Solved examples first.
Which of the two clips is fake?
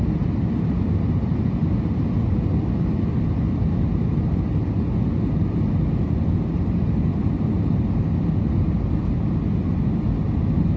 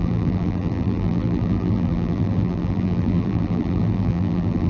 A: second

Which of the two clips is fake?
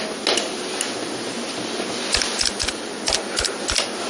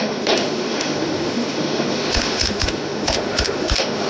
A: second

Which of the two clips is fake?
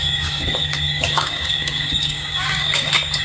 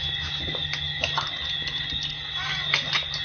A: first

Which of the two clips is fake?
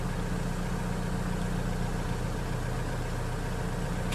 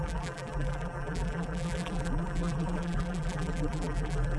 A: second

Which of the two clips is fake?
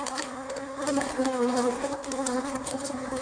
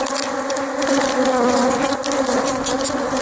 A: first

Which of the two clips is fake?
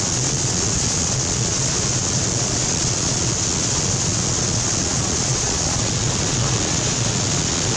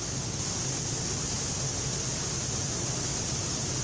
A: first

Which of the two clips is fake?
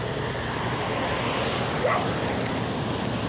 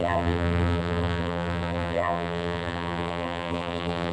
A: second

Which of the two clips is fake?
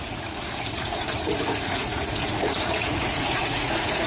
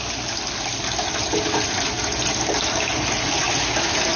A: first